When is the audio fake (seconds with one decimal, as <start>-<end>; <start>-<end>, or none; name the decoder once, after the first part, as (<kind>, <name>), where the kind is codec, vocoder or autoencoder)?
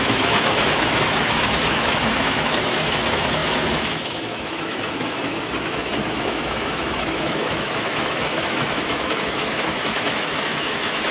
0.0-11.1 (autoencoder, DAC-VAE)